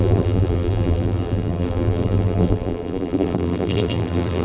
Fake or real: fake